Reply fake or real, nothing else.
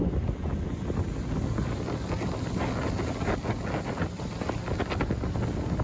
real